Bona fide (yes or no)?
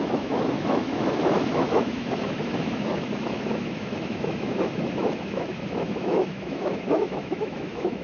no